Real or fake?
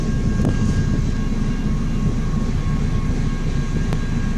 real